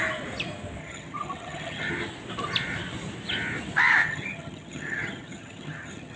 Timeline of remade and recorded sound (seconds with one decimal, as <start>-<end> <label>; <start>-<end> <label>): 0.0-0.8 recorded; 0.8-1.9 remade; 1.9-4.0 recorded; 4.0-6.2 remade